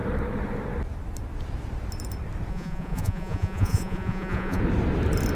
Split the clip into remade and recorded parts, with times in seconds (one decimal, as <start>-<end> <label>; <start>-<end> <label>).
0.0-2.5 recorded; 2.5-4.6 remade; 4.6-5.3 recorded